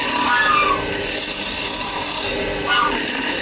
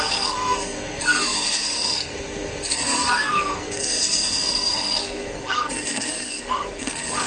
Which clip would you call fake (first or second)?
second